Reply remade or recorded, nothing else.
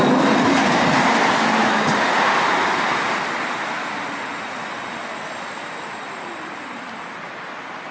recorded